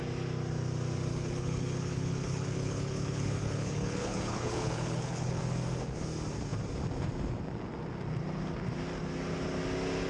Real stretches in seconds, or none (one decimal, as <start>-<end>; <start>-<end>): 0.0-1.1; 5.4-10.1